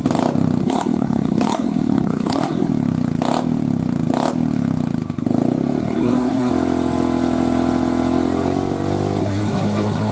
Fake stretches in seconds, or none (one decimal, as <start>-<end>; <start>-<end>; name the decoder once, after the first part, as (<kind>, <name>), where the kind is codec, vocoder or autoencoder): 0.6-2.7 (codec, SNAC); 5.8-6.5; 9.2-10.1